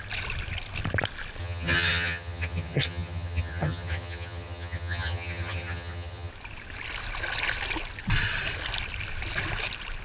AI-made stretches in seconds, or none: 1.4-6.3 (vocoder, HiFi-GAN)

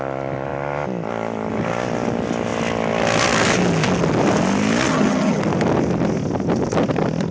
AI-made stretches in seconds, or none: 4.9-5.4 (vocoder, HiFi-GAN)

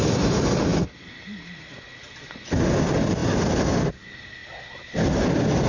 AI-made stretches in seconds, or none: none

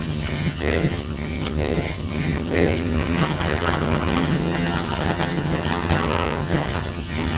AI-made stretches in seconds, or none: 0.0-7.4 (vocoder, HiFi-GAN)

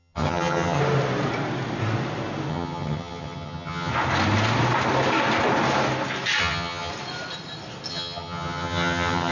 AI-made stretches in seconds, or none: 0.0-0.8 (vocoder, HiFi-GAN); 2.5-3.9; 6.4-6.9; 7.9-9.3